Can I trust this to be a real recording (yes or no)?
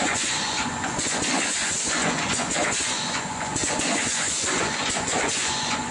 no